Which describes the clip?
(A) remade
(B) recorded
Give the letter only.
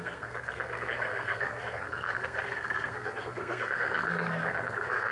A